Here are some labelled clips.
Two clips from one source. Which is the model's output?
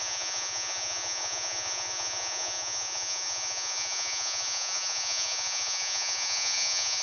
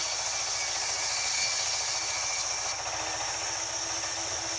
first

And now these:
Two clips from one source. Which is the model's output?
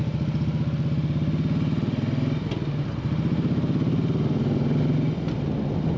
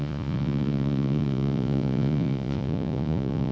second